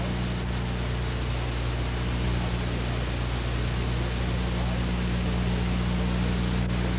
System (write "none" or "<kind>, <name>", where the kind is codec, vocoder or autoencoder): none